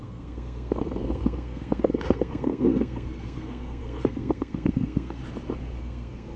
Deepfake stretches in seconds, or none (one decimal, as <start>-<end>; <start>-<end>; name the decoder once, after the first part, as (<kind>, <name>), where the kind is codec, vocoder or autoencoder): 0.0-5.2 (codec, SNAC); 5.8-6.4